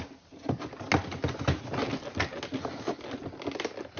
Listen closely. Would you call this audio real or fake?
real